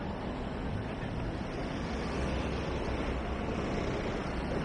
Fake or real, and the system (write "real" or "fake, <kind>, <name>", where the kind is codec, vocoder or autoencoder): real